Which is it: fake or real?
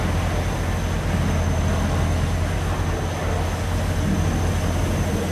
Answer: real